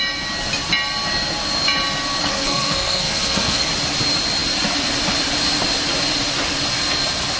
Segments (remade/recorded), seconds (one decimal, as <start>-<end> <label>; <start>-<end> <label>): 0.0-2.3 recorded; 2.3-3.7 remade; 3.7-7.4 recorded